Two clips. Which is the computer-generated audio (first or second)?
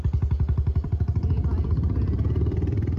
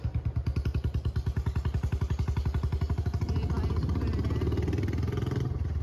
first